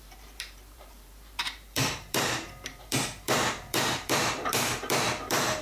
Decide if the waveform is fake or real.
fake